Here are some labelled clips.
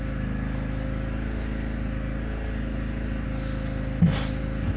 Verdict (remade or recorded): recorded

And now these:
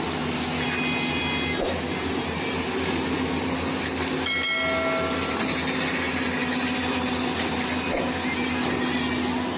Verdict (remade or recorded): recorded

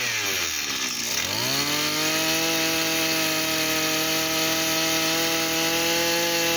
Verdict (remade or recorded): recorded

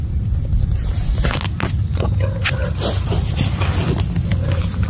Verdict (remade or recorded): recorded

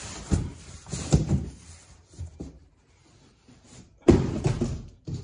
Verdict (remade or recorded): remade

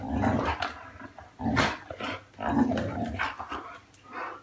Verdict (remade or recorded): recorded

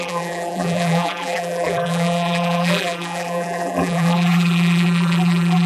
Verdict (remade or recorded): remade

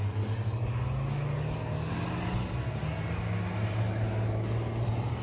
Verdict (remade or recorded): recorded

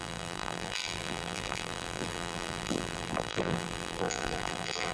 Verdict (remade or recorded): remade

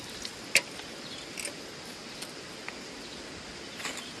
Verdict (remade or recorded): recorded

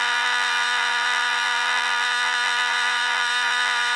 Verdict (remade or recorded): remade